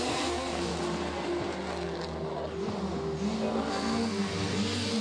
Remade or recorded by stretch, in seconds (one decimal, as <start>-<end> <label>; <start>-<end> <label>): 0.0-0.7 remade; 0.7-3.7 recorded; 3.7-5.0 remade